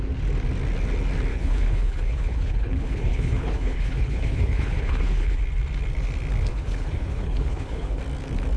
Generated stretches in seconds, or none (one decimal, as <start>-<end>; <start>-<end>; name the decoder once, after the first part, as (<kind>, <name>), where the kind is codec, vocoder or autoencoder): 1.3-5.4 (codec, HILCodec); 6.5-8.0